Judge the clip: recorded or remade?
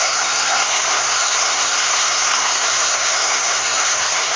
remade